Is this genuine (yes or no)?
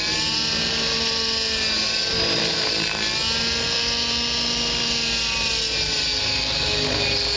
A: yes